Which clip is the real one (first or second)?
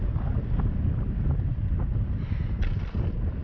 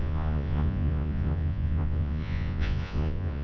first